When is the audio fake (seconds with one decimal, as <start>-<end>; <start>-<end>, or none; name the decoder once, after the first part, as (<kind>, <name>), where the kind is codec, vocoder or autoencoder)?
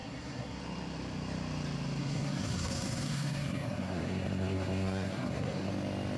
0.0-0.6 (codec, SNAC); 2.0-5.7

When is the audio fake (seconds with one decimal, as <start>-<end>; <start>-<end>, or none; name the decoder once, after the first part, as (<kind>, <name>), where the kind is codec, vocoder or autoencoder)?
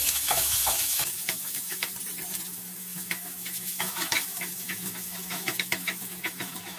0.0-1.9 (autoencoder, DAC-VAE); 2.5-6.8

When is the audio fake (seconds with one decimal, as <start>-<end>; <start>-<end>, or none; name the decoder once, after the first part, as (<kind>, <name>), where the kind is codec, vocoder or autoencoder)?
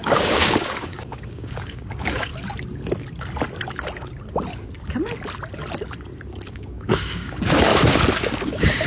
0.0-2.3 (codec, DAC); 6.5-7.7; 8.3-8.9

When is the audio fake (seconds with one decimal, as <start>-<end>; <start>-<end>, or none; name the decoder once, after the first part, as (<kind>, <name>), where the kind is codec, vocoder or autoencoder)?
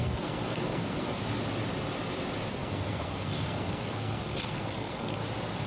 0.0-1.2 (codec, SNAC); 2.5-5.2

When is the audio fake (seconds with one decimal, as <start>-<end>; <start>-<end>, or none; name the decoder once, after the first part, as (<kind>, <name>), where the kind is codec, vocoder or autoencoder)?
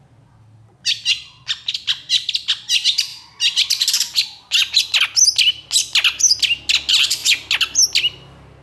none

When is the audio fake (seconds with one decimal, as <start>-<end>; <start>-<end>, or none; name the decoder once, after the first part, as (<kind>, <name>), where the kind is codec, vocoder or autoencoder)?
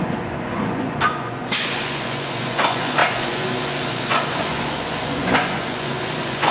0.0-6.5 (vocoder, Vocos)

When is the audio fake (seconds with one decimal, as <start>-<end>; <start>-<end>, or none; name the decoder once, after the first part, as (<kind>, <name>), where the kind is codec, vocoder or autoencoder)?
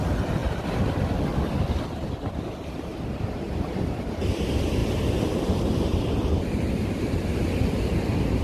none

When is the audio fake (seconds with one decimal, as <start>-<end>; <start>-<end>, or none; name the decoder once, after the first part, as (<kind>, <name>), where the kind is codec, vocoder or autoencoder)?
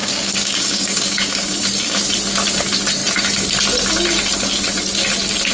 0.0-2.0 (codec, DAC)